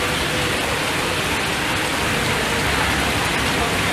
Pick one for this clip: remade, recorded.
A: recorded